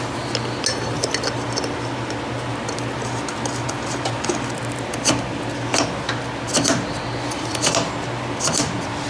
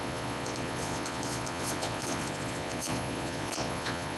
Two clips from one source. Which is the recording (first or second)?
first